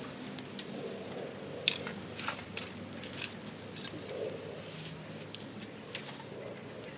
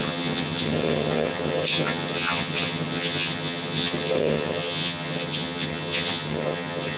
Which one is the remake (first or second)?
second